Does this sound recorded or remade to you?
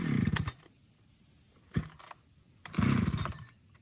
recorded